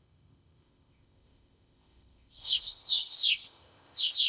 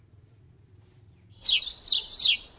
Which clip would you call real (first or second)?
second